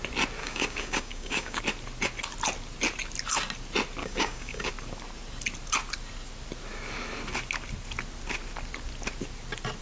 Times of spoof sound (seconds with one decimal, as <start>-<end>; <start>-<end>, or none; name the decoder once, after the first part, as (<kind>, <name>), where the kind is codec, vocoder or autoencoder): 0.4-1.6 (codec, DAC); 4.0-4.7

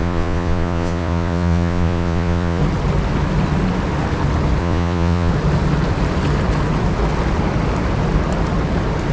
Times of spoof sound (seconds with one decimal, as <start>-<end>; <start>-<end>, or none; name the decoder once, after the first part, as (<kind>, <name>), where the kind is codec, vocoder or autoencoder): 0.0-2.6 (vocoder, Vocos); 4.6-5.3

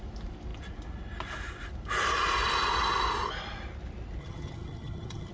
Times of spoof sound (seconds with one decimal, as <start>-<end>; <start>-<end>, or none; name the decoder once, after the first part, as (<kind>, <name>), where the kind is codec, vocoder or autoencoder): 4.2-5.3 (vocoder, HiFi-GAN)

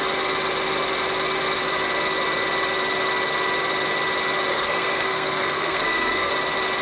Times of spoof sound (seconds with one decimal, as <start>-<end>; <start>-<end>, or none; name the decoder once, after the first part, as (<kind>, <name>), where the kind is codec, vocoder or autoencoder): 4.5-6.3 (codec, SNAC)

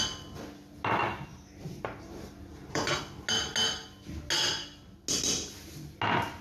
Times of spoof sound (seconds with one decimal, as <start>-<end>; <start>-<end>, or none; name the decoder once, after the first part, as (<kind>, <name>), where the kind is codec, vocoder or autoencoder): 1.3-3.0 (vocoder, BigVGAN v2)

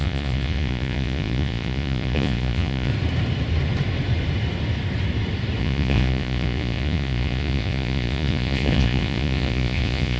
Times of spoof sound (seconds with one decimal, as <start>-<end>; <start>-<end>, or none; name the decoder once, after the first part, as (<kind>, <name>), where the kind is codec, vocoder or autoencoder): 0.0-2.9 (vocoder, Vocos); 5.6-10.2

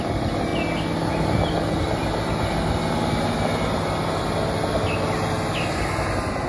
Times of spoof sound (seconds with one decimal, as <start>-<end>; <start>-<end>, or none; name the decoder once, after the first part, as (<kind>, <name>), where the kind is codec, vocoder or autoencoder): none

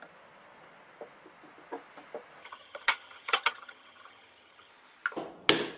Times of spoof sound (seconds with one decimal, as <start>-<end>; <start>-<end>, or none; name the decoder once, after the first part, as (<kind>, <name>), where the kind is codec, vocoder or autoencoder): 2.4-4.7 (vocoder, HiFi-GAN)